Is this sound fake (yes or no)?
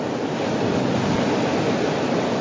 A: no